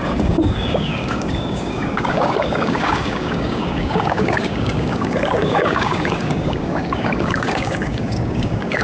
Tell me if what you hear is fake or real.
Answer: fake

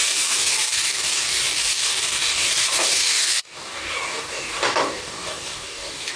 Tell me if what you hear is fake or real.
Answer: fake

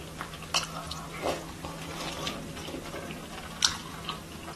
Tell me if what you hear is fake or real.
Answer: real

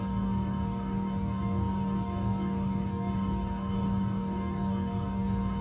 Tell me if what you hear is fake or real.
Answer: fake